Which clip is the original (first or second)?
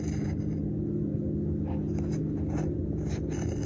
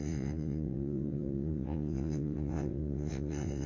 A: first